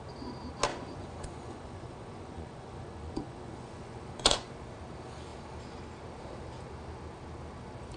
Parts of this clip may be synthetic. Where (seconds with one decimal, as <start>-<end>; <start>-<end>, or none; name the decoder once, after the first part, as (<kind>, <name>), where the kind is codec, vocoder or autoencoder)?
0.7-4.5 (vocoder, Vocos)